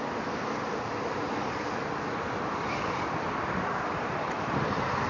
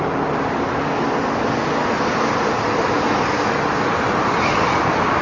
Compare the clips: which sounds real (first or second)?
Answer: second